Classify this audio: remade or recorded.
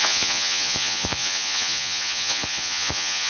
remade